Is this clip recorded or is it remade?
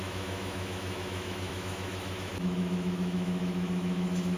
remade